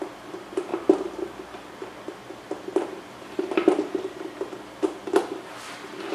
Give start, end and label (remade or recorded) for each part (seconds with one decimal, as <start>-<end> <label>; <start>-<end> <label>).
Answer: 0.0-6.1 recorded